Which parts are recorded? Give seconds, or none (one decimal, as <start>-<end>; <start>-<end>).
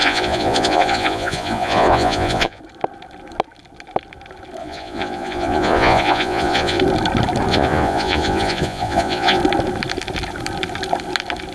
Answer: 2.6-4.6; 6.8-7.5; 9.4-11.5